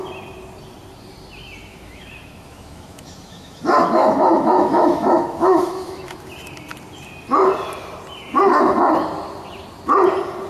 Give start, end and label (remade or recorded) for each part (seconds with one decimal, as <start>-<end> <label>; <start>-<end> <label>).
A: 0.0-1.7 recorded; 1.7-6.3 remade; 6.3-10.5 recorded